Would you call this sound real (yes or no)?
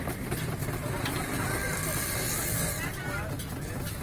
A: yes